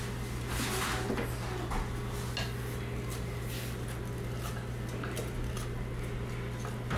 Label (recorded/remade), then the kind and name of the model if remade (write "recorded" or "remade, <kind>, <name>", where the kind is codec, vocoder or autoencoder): recorded